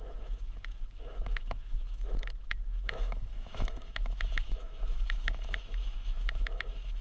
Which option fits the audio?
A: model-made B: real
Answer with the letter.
A